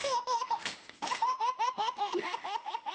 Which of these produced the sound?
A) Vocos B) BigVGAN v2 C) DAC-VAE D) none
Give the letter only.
C